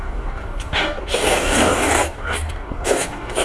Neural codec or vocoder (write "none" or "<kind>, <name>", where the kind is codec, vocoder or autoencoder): codec, DAC